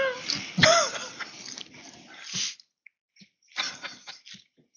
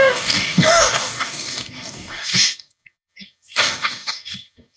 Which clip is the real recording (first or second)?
first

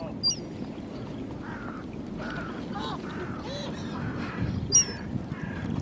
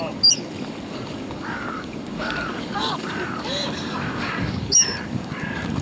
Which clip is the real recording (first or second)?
first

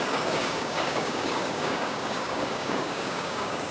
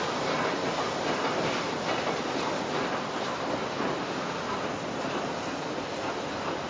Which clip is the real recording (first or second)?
second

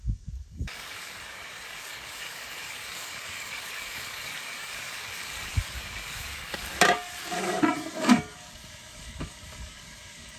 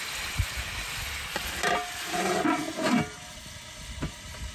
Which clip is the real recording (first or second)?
second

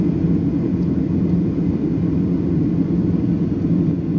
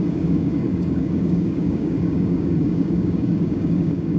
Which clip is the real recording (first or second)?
first